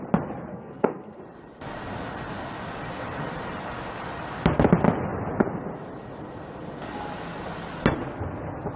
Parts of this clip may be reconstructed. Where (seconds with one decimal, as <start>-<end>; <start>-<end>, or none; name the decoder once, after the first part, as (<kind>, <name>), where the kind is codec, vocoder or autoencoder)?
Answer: 0.5-1.2 (codec, SNAC)